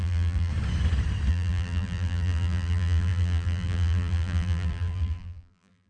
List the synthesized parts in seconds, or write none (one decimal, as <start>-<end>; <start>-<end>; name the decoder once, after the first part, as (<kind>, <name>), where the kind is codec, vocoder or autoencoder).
0.0-0.5 (vocoder, BigVGAN v2); 1.3-5.9